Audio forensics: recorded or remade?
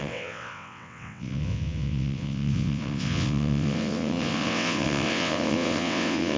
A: remade